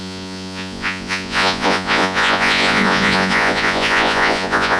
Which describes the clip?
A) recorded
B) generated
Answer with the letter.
B